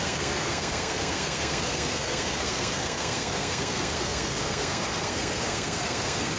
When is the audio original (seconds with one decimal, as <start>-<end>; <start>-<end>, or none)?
none